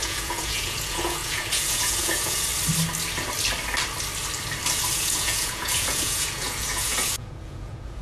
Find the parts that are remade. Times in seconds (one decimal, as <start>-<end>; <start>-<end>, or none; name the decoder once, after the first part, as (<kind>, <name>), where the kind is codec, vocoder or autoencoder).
0.0-2.5 (vocoder, Vocos); 4.9-8.0